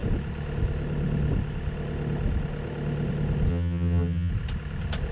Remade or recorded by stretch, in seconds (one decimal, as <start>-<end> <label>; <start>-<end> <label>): 0.0-3.5 recorded; 3.5-4.3 remade; 4.3-5.1 recorded